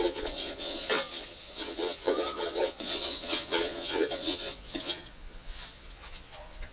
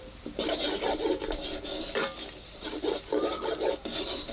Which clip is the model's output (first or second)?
first